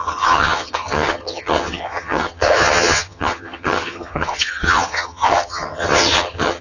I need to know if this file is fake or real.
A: fake